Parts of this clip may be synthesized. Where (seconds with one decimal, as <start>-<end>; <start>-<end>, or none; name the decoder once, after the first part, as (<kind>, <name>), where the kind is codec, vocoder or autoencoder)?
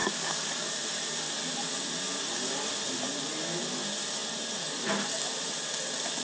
0.0-0.7 (codec, DAC)